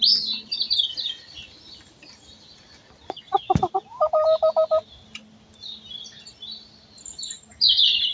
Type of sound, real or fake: real